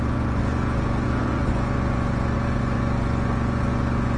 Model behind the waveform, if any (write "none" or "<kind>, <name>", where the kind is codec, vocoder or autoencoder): vocoder, Vocos